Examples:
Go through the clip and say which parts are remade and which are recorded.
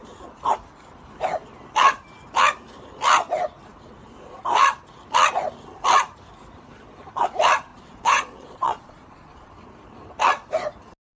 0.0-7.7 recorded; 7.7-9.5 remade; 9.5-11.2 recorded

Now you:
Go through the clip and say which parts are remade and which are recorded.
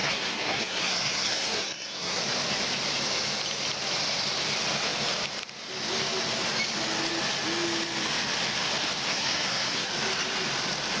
0.0-2.2 remade; 2.2-9.1 recorded; 9.1-9.9 remade; 9.9-11.0 recorded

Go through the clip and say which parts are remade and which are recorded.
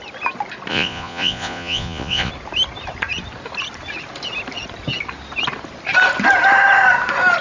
0.0-0.7 recorded; 0.7-2.3 remade; 2.3-7.4 recorded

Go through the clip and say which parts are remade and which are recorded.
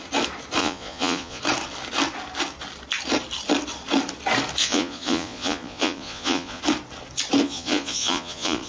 0.0-0.6 recorded; 0.6-1.4 remade; 1.4-4.6 recorded; 4.6-6.6 remade; 6.6-7.4 recorded; 7.4-8.7 remade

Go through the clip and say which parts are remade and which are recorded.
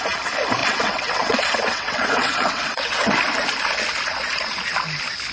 0.0-0.6 recorded; 0.6-3.1 remade; 3.1-5.3 recorded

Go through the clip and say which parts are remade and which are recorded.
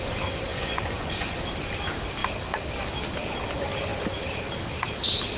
0.0-0.5 recorded; 0.5-1.4 remade; 1.4-5.4 recorded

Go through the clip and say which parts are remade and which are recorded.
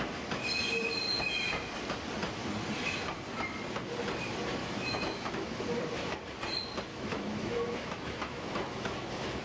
0.0-4.6 recorded; 4.6-5.6 remade; 5.6-6.9 recorded; 6.9-9.4 remade